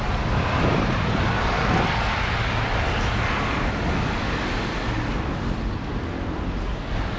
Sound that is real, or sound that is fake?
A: real